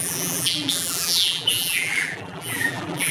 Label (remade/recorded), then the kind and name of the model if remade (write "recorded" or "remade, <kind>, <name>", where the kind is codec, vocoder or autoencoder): remade, vocoder, BigVGAN v2